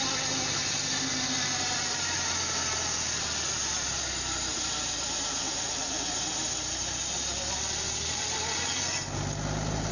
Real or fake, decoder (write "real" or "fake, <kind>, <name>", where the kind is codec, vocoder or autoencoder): real